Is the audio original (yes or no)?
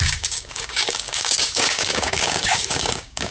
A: no